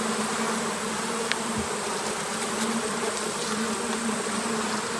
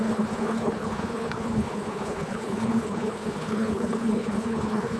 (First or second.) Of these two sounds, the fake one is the second